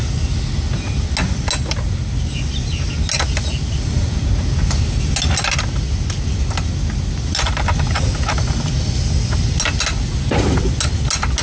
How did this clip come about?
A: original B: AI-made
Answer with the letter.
A